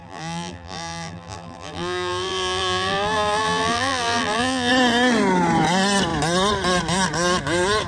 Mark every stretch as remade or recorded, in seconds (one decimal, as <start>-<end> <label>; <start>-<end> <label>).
0.0-4.7 remade; 4.7-7.9 recorded